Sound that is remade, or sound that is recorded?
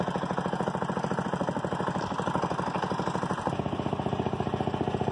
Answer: remade